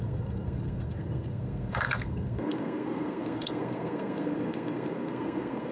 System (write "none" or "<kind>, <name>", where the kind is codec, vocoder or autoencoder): codec, SNAC